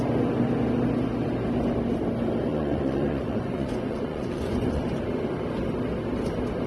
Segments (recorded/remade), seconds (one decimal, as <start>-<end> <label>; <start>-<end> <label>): 0.0-2.5 recorded; 2.5-5.0 remade; 5.0-6.7 recorded